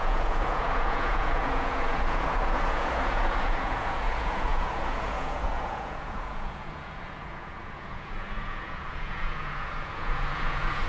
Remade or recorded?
remade